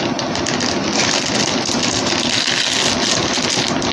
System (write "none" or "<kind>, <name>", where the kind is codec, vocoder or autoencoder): none